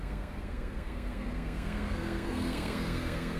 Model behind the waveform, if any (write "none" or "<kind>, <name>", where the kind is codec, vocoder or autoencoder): codec, SNAC